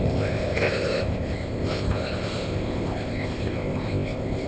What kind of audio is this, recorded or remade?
remade